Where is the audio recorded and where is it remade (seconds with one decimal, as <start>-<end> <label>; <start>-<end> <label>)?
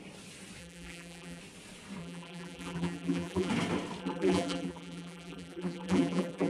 0.0-0.6 recorded; 0.6-1.4 remade; 1.4-2.0 recorded; 2.0-3.5 remade; 3.5-4.0 recorded; 4.0-6.5 remade